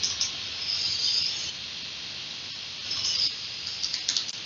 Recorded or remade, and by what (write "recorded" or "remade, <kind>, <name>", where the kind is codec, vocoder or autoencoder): recorded